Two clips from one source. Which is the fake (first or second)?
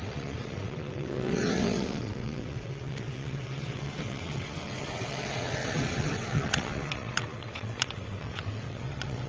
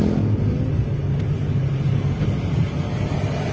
first